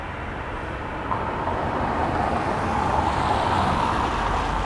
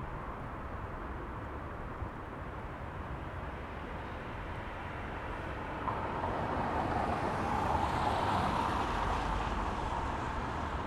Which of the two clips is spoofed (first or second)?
second